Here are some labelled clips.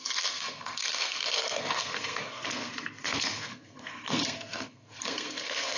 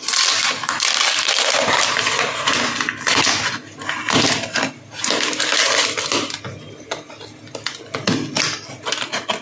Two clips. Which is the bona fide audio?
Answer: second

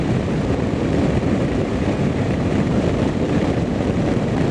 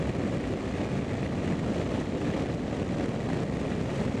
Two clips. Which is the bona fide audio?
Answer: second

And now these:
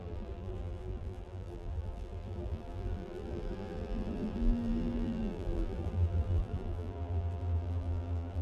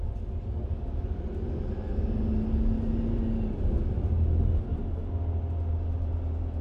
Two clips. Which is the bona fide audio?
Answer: second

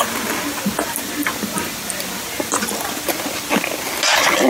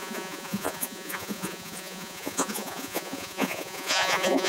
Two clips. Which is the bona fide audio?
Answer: first